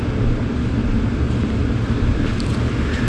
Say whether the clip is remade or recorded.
recorded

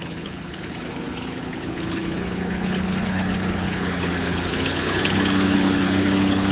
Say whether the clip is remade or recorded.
remade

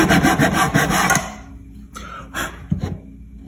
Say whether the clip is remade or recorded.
recorded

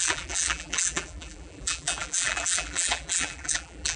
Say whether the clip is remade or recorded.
remade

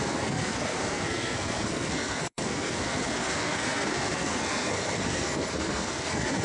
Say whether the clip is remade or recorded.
remade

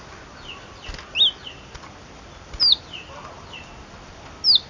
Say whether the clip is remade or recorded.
recorded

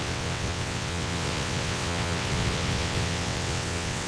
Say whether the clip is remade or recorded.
remade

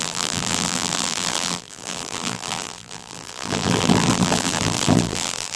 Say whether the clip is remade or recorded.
remade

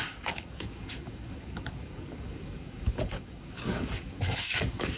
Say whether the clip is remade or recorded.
remade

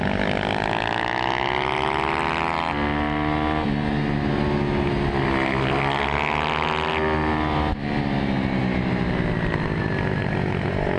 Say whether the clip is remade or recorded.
recorded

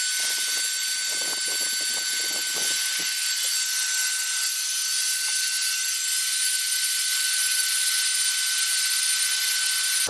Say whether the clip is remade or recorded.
recorded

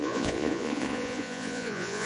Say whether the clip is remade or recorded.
remade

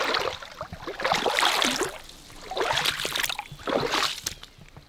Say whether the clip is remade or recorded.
recorded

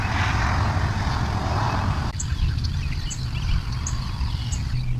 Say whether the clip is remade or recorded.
recorded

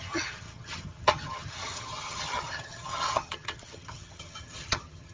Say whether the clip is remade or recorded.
remade